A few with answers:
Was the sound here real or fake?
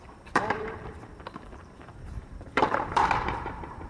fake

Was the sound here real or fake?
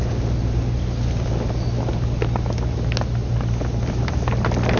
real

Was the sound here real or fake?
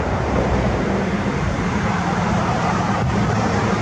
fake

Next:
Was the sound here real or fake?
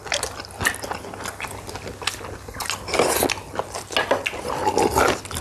real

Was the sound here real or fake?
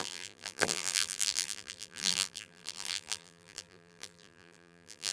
fake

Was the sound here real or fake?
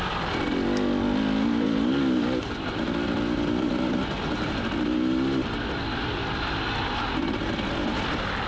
real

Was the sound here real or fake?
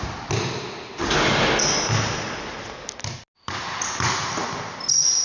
real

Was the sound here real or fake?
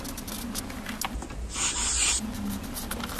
real